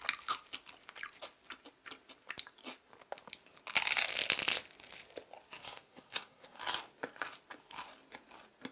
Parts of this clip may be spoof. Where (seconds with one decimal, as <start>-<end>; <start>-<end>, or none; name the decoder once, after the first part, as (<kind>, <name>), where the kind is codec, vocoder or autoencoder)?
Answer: 5.6-6.6 (codec, SNAC)